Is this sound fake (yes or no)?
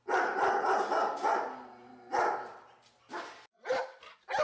no